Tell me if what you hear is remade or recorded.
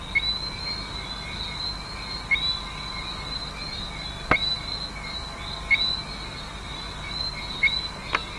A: recorded